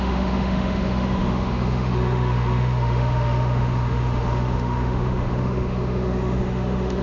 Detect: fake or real fake